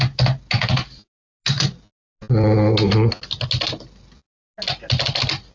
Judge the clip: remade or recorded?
recorded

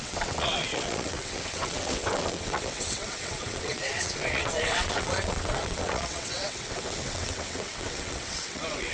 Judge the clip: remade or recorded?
remade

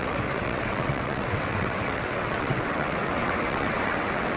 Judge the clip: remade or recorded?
remade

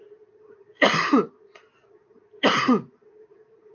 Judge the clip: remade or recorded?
recorded